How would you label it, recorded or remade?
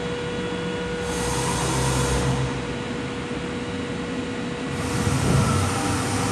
recorded